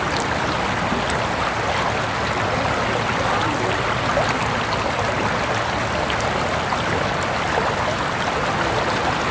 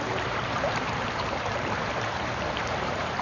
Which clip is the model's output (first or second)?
second